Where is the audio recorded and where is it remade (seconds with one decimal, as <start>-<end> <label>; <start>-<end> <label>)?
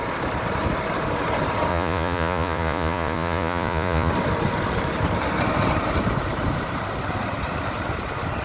0.0-1.7 recorded; 1.7-4.1 remade; 4.1-8.4 recorded